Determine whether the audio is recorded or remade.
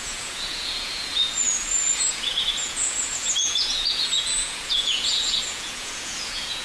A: remade